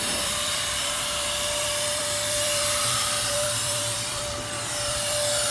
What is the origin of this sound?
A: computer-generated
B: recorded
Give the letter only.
A